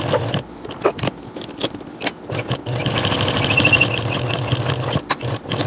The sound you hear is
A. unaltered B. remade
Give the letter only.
B